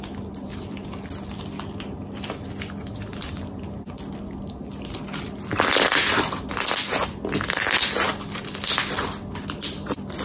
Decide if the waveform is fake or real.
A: real